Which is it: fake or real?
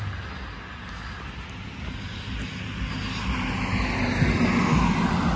real